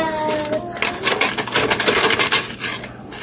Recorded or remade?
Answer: recorded